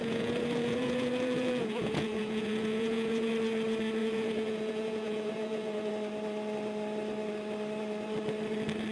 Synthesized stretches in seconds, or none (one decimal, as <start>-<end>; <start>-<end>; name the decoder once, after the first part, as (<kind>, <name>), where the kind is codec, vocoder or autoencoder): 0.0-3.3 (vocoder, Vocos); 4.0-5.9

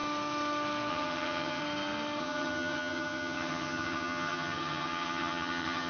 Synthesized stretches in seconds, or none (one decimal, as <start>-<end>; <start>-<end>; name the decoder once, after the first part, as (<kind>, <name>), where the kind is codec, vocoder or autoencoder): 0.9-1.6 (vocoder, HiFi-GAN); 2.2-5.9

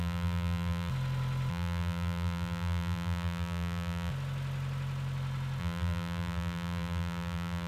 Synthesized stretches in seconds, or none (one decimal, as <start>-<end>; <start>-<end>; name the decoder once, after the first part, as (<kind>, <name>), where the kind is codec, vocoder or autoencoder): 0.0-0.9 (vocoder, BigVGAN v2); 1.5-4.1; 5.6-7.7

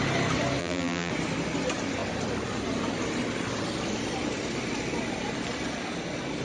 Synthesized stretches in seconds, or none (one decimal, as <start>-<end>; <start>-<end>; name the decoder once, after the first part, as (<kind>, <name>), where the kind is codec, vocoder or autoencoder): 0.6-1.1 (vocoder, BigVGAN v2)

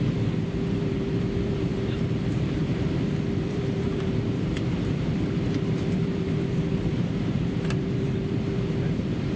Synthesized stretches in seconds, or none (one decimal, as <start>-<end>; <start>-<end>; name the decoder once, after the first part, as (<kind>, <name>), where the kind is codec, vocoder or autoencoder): 0.0-9.4 (vocoder, BigVGAN v2)

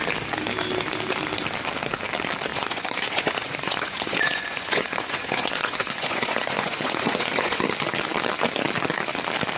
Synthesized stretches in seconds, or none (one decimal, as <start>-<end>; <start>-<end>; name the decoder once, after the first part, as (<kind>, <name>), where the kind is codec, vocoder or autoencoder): 2.5-7.6 (vocoder, Vocos)